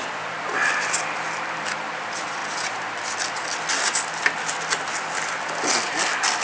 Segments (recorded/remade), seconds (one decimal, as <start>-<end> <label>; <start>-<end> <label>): 0.0-6.4 recorded